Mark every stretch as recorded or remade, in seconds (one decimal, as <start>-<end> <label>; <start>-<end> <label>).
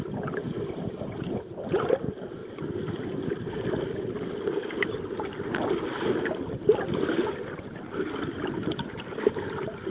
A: 0.0-9.9 recorded